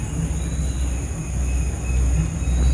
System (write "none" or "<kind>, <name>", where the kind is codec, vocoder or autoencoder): none